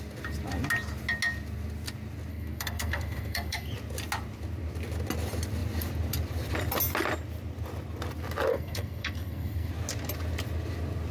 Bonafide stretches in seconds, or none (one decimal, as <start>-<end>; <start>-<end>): 0.0-2.3; 3.7-8.5; 9.7-11.1